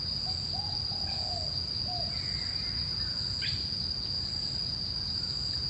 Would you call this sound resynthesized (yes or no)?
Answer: no